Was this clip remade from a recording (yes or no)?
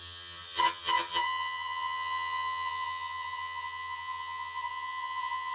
yes